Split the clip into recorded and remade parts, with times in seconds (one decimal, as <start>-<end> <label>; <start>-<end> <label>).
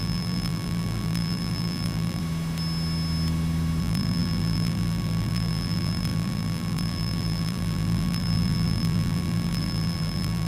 0.0-2.2 remade; 2.2-3.8 recorded; 3.8-10.5 remade